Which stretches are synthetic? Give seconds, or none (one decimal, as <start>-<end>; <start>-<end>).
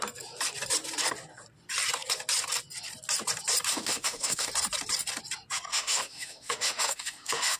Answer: 3.7-4.5; 5.7-7.6